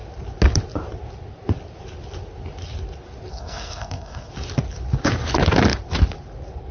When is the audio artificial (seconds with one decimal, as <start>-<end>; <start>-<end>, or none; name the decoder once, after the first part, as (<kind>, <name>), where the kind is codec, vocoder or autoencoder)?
3.3-4.3 (codec, SNAC)